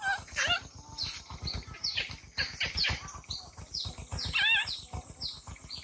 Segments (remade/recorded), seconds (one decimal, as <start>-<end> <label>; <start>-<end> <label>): 0.0-5.8 recorded